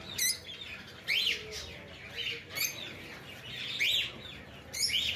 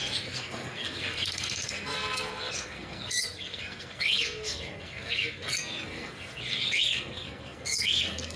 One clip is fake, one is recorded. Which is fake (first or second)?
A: second